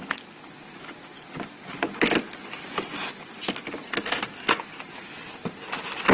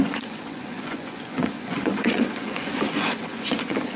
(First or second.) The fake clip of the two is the second